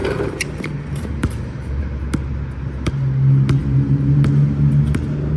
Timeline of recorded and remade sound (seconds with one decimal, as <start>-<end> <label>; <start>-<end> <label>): 0.0-1.8 remade; 1.8-5.4 recorded